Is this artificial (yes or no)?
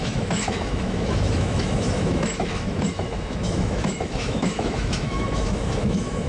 yes